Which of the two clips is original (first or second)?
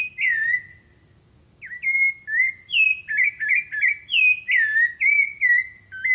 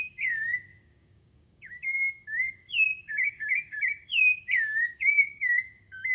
first